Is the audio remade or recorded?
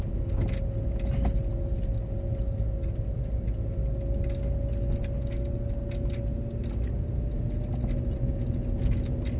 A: recorded